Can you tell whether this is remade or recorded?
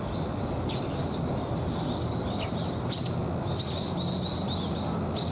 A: recorded